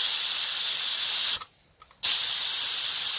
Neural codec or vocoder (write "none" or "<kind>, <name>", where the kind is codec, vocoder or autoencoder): vocoder, BigVGAN v2